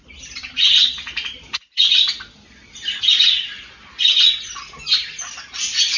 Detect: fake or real real